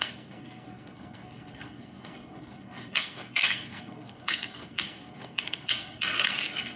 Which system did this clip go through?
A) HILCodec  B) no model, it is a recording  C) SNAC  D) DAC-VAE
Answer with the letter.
C